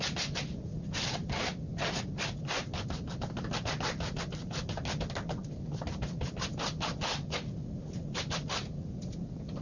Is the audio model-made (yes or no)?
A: no